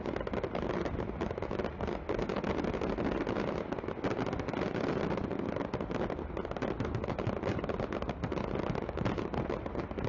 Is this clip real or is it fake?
real